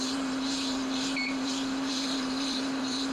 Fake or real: fake